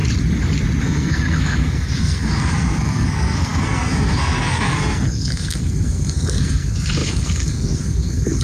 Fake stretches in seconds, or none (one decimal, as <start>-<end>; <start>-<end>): 0.8-8.4